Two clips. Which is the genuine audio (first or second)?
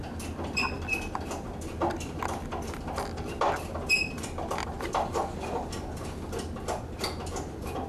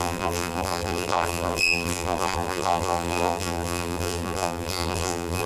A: first